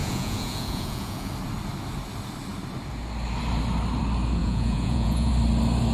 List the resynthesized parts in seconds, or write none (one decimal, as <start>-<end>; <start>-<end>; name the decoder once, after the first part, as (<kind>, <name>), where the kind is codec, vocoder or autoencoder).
0.0-1.3 (vocoder, Vocos); 4.4-5.3